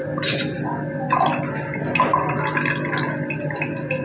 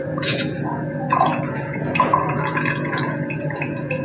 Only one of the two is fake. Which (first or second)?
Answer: second